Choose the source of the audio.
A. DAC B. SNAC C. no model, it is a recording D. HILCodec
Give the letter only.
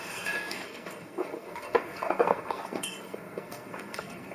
B